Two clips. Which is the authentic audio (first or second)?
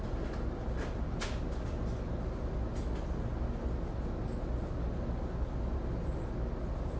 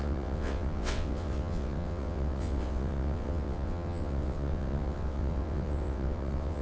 first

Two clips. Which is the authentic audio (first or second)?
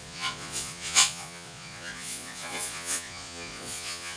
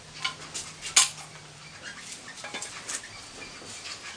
second